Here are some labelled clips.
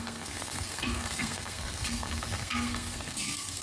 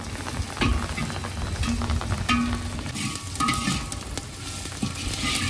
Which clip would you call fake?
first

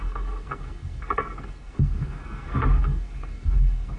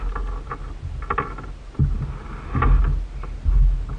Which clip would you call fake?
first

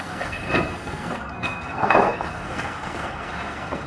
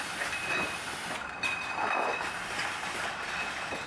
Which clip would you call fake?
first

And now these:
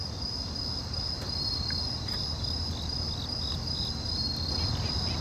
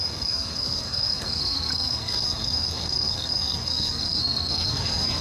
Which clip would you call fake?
second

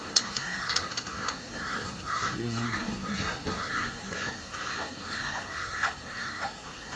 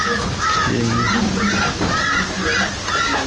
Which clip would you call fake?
first